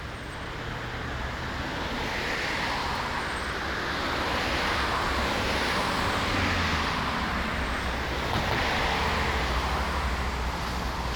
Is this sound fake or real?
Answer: real